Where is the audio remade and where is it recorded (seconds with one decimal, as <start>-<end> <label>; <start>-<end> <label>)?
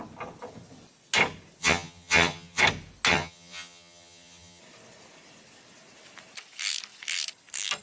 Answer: 0.0-1.6 recorded; 1.6-2.6 remade; 2.6-3.1 recorded; 3.1-4.6 remade; 4.6-7.8 recorded